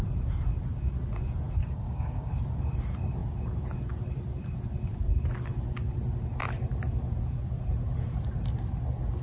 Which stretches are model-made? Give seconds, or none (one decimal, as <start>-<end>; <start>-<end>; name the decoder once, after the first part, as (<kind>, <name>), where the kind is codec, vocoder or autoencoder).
1.6-2.3 (codec, DAC)